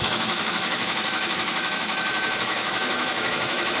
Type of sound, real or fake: fake